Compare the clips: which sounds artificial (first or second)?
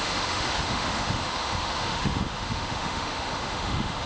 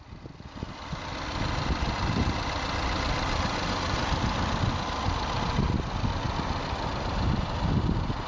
first